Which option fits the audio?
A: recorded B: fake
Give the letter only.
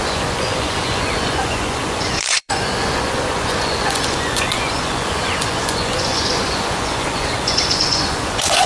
B